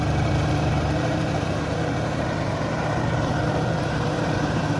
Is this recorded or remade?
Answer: remade